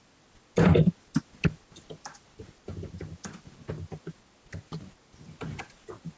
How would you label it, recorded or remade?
recorded